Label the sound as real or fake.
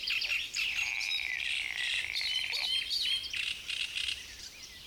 real